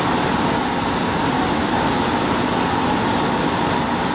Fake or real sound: real